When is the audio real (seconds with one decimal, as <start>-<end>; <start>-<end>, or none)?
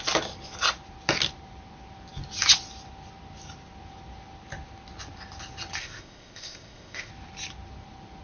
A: 0.0-5.8; 7.1-8.2